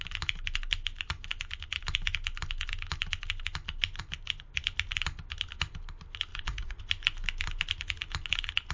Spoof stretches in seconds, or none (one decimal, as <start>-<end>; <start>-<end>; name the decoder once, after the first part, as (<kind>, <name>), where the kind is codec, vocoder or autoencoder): 6.3-6.8 (vocoder, Vocos)